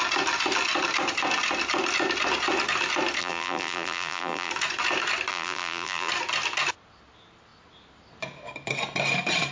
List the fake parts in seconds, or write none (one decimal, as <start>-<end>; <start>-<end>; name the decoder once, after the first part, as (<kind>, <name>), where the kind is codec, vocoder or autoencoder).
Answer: 3.2-4.5 (vocoder, BigVGAN v2); 5.3-6.1